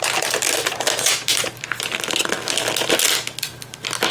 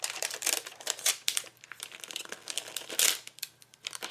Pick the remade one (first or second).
second